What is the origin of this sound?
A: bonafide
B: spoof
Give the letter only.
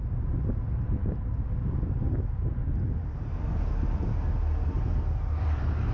A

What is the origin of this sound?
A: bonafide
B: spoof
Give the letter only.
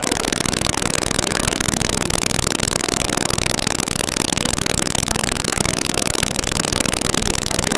B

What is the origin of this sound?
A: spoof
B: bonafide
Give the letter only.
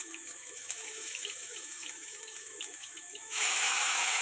A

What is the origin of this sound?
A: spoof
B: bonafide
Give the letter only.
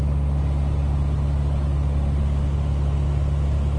B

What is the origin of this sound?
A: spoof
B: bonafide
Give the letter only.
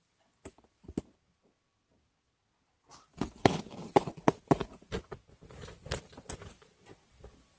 B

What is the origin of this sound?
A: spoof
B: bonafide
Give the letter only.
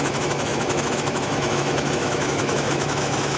A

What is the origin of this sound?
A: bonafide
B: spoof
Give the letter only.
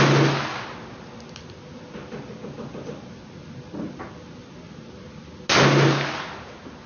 A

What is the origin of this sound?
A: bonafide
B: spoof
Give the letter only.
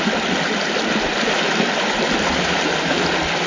A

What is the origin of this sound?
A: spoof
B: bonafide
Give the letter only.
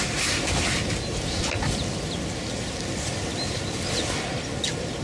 B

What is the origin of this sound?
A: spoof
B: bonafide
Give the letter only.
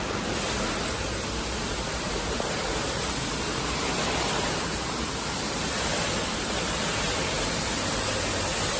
B